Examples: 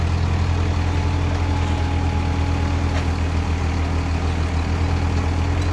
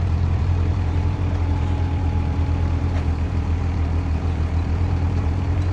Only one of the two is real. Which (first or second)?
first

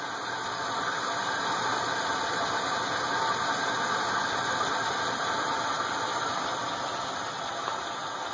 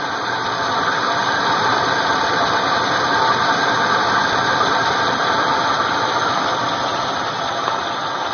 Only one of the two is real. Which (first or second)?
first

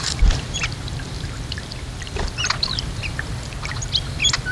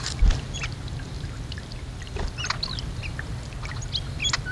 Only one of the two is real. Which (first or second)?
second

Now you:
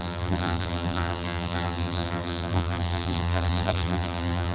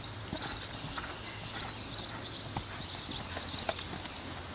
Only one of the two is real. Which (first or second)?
second